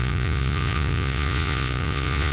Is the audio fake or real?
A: fake